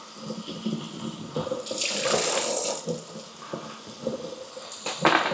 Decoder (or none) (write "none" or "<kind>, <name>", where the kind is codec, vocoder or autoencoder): none